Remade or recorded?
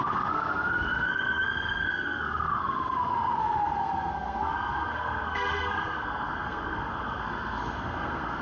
remade